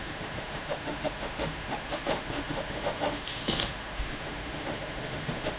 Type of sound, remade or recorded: remade